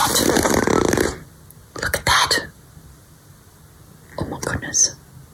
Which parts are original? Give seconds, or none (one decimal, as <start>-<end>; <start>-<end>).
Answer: 0.7-1.6; 3.6-5.3